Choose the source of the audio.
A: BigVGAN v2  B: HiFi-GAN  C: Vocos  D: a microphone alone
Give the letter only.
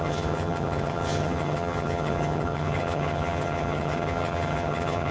B